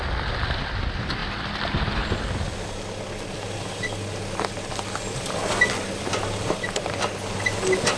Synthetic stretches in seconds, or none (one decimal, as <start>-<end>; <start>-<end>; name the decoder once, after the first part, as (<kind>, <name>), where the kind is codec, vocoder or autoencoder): none